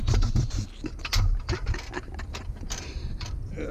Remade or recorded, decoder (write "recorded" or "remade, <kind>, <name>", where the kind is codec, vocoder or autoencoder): recorded